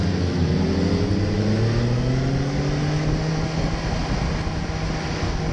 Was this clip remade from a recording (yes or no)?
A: no